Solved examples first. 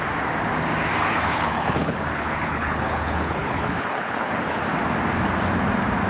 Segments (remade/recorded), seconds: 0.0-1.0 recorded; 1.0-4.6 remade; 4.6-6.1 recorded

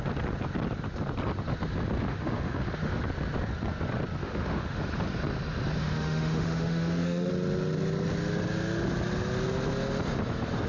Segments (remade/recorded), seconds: 0.0-2.1 recorded; 2.1-3.0 remade; 3.0-4.2 recorded; 4.2-4.8 remade; 4.8-5.8 recorded; 5.8-7.3 remade; 7.3-10.7 recorded

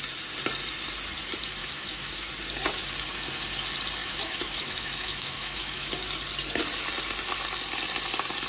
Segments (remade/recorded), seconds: 0.0-1.6 recorded; 1.6-2.3 remade; 2.3-4.0 recorded; 4.0-5.9 remade; 5.9-8.5 recorded

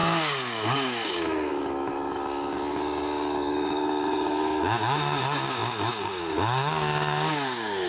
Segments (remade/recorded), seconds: 0.0-7.9 remade

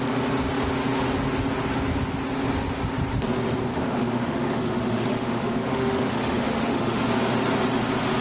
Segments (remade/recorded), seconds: 0.0-3.7 recorded; 3.7-7.0 remade; 7.0-8.2 recorded

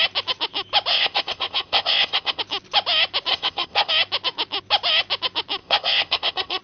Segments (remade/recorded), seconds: 0.0-0.9 recorded; 0.9-2.4 remade; 2.4-3.3 recorded; 3.3-3.9 remade; 3.9-5.6 recorded; 5.6-6.6 remade

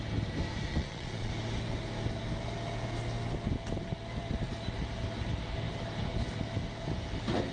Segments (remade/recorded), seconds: 0.0-0.7 recorded; 0.7-1.3 remade; 1.3-7.5 recorded

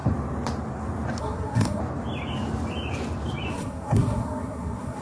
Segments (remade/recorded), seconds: 0.0-1.2 recorded; 1.2-1.8 remade; 1.8-3.5 recorded; 3.5-5.0 remade